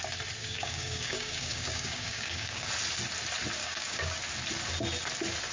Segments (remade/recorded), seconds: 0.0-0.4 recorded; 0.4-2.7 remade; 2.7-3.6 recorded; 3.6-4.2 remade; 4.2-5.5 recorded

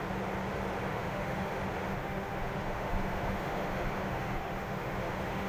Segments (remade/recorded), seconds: 0.0-0.9 recorded; 0.9-1.6 remade; 1.6-2.0 recorded; 2.0-5.5 remade

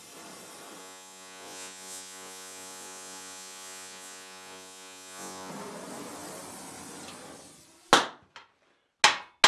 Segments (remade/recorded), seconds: 0.0-0.8 recorded; 0.8-5.5 remade; 5.5-9.5 recorded

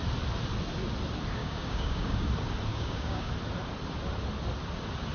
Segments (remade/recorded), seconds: 0.0-1.4 recorded; 1.4-2.3 remade; 2.3-2.7 recorded; 2.7-3.3 remade; 3.3-5.1 recorded